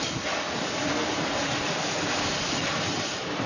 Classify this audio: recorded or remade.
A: remade